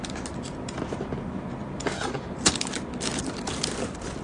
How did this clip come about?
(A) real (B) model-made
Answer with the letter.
A